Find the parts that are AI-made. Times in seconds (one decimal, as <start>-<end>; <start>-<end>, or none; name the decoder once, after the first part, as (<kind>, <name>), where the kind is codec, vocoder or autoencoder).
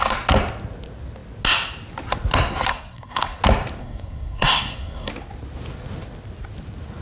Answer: 2.7-3.4 (codec, SNAC); 3.8-5.1